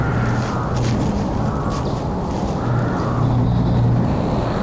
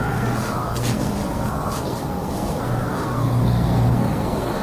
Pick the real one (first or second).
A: first